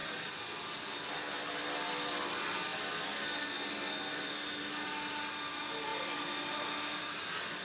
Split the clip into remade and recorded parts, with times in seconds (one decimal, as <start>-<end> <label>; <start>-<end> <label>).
0.0-7.6 recorded